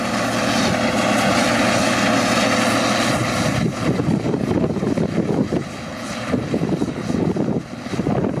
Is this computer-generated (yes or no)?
no